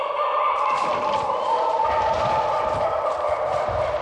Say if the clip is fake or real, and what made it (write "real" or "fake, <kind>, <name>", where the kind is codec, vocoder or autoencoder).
fake, vocoder, BigVGAN v2